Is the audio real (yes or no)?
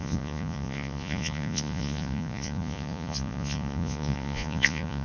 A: no